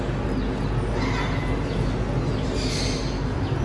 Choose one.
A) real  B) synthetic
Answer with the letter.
A